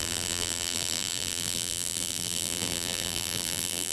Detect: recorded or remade remade